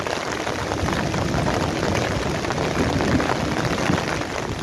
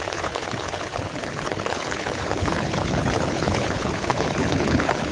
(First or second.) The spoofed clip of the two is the second